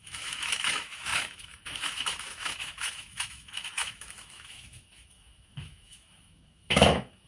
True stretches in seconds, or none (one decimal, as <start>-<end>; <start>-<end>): none